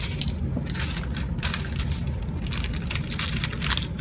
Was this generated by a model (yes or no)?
no